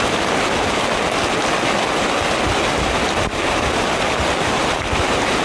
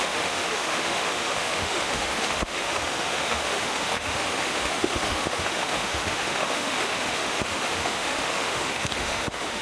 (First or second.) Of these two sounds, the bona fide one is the first